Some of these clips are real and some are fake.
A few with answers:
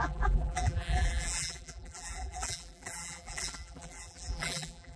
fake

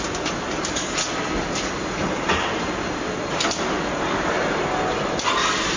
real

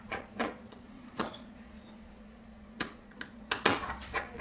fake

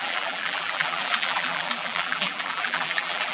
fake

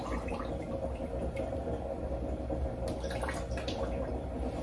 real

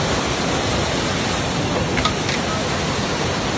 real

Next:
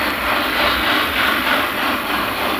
real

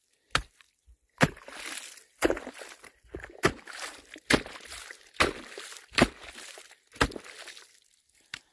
real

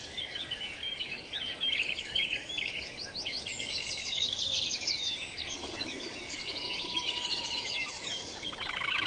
fake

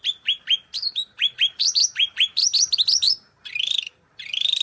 fake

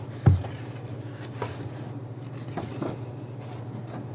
real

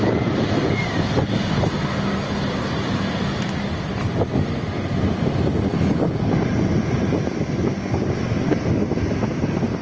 real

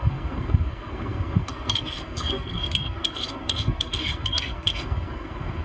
fake